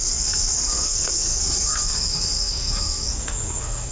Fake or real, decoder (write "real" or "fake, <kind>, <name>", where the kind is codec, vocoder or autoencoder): fake, codec, SNAC